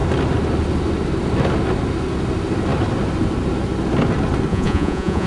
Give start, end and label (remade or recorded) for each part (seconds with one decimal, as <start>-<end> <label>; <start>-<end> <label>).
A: 0.0-4.5 recorded; 4.5-5.3 remade